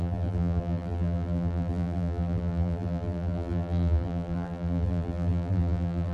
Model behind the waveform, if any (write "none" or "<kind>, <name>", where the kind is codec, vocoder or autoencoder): vocoder, BigVGAN v2